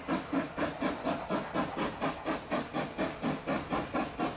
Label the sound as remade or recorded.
recorded